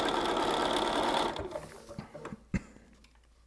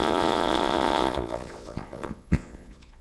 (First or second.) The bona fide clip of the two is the first